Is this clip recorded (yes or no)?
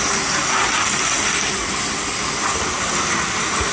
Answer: yes